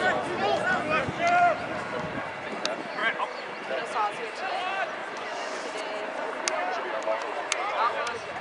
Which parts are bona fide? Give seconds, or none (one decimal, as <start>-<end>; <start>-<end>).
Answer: 0.0-5.0; 5.6-8.4